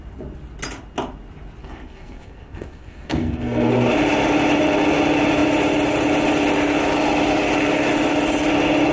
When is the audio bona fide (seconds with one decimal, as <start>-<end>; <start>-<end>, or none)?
0.0-1.6; 3.7-8.9